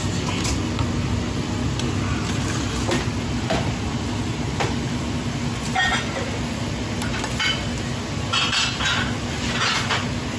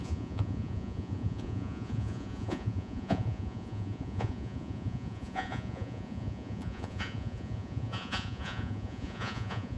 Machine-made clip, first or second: second